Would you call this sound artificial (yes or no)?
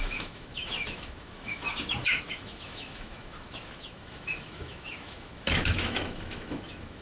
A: yes